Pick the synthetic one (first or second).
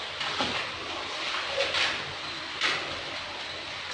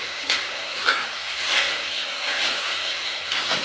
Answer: second